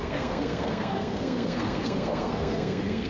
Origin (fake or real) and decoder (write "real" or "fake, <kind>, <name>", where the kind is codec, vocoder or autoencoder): fake, codec, SNAC